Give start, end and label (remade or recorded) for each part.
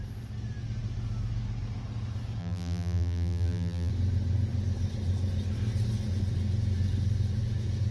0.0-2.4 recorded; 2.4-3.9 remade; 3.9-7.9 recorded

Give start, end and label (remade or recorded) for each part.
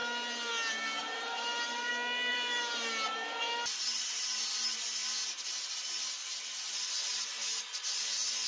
0.0-1.0 recorded; 1.0-1.9 remade; 1.9-2.3 recorded; 2.3-2.9 remade; 2.9-8.5 recorded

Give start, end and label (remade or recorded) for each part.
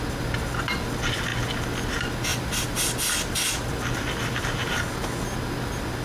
0.0-2.3 recorded; 2.3-4.8 remade; 4.8-6.0 recorded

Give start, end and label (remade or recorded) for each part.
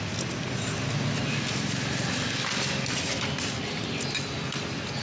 0.0-1.2 recorded; 1.2-1.9 remade; 1.9-5.0 recorded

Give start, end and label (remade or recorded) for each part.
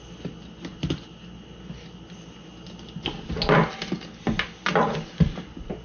0.0-5.8 recorded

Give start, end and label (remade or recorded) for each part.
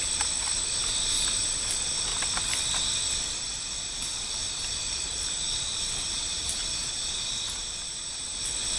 0.0-2.1 recorded; 2.1-4.8 remade; 4.8-5.7 recorded; 5.7-6.8 remade; 6.8-8.8 recorded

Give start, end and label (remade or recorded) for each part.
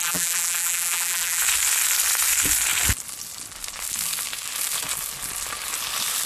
0.0-1.4 remade; 1.4-6.3 recorded